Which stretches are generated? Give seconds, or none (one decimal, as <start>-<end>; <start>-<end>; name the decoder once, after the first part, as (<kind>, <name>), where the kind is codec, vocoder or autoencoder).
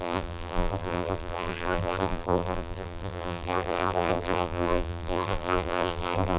0.0-6.4 (vocoder, BigVGAN v2)